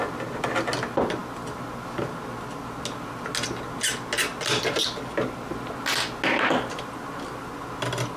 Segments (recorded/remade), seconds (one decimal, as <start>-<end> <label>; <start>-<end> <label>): 0.0-8.2 recorded